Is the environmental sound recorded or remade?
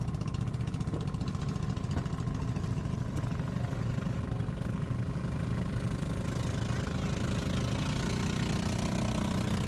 recorded